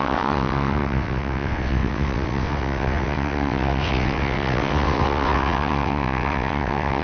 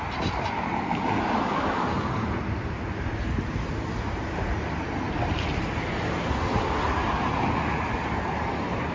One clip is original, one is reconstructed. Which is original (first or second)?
second